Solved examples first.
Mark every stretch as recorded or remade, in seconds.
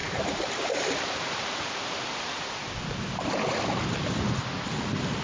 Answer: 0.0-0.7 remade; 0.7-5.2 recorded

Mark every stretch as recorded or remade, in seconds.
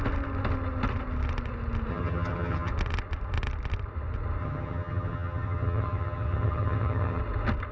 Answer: 0.0-1.9 recorded; 1.9-2.7 remade; 2.7-4.4 recorded; 4.4-7.2 remade; 7.2-7.7 recorded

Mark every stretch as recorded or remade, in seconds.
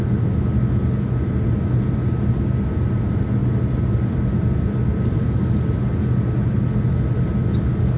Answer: 0.0-8.0 recorded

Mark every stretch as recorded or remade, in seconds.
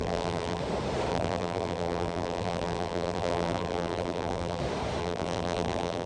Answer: 0.0-0.6 remade; 0.6-1.1 recorded; 1.1-4.6 remade; 4.6-5.0 recorded; 5.0-6.1 remade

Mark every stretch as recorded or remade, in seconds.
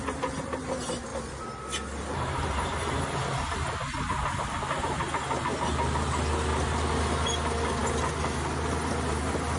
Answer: 0.0-9.6 recorded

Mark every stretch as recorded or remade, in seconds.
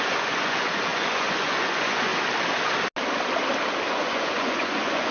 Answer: 0.0-2.1 remade; 2.1-3.9 recorded; 3.9-5.1 remade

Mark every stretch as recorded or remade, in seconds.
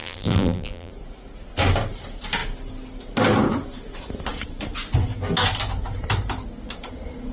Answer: 0.0-0.9 remade; 0.9-7.3 recorded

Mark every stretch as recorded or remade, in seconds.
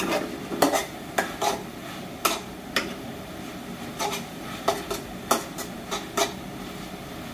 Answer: 0.0-7.3 recorded